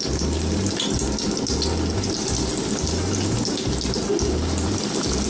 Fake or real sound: real